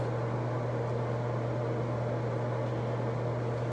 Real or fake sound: real